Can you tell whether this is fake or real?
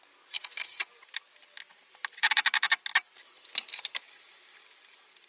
real